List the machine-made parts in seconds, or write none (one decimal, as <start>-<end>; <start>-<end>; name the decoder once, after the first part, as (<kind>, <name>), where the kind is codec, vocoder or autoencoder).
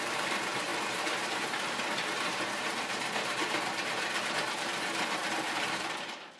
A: 0.0-6.4 (vocoder, BigVGAN v2)